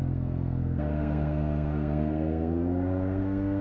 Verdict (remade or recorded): remade